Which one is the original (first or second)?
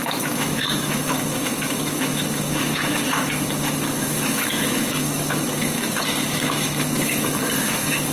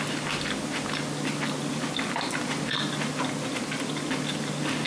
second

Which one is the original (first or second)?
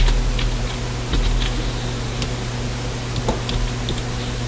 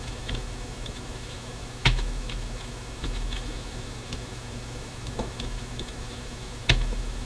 first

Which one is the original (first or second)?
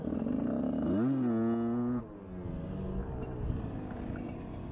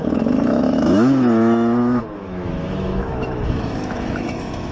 first